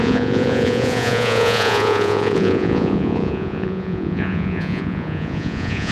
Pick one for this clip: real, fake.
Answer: fake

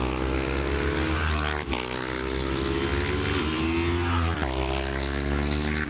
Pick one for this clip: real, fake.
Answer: real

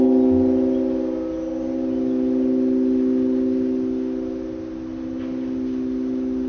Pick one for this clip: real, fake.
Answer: real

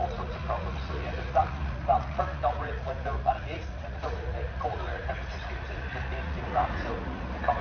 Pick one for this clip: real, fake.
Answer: fake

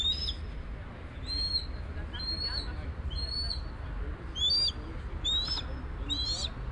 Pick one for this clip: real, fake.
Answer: real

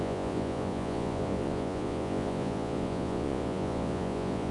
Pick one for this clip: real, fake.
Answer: fake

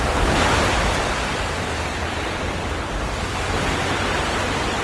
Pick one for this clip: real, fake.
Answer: real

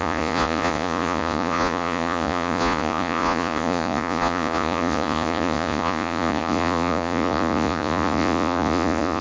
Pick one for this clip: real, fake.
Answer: fake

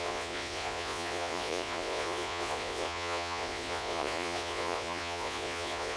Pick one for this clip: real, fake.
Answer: fake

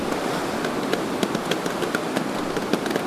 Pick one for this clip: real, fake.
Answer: real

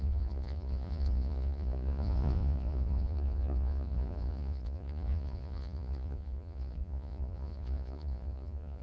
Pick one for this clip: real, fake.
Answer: fake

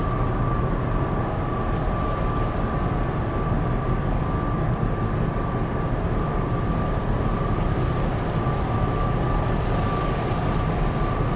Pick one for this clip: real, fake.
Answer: real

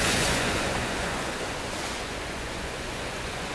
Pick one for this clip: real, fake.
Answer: fake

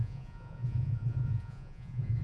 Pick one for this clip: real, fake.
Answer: fake